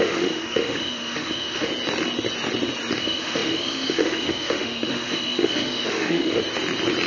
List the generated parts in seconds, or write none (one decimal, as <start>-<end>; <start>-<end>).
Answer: 0.0-1.7; 3.0-6.4